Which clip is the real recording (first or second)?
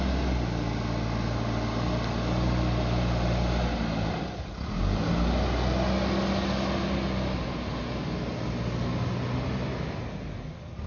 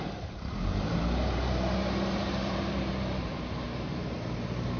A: first